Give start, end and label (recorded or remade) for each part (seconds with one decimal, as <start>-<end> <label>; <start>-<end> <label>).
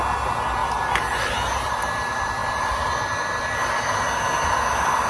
0.0-5.1 recorded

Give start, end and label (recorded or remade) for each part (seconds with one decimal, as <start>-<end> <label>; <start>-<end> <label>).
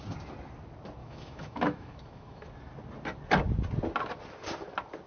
0.0-1.0 recorded; 1.0-2.4 remade; 2.4-5.1 recorded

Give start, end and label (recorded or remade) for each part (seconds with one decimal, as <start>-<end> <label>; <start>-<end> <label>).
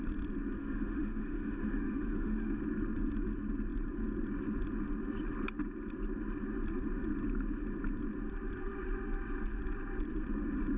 0.0-0.6 recorded; 0.6-2.6 remade; 2.6-10.8 recorded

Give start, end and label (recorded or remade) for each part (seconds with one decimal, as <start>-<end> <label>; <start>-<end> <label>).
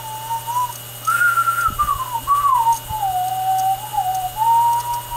0.0-5.2 recorded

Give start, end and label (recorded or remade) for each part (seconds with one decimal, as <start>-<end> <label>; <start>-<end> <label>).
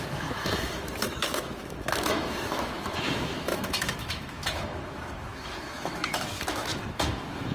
0.0-7.5 remade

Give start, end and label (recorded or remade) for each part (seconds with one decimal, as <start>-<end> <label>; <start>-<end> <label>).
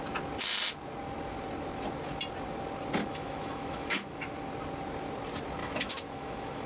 0.0-3.0 recorded; 3.0-4.3 remade; 4.3-5.6 recorded; 5.6-6.7 remade